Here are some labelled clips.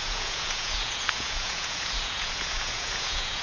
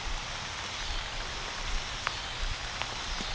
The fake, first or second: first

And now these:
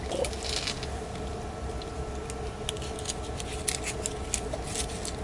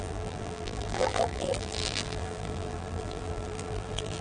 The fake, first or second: second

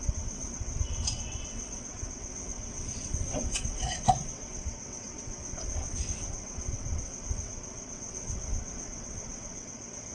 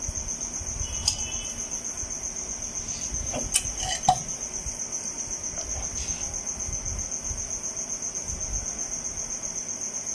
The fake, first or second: first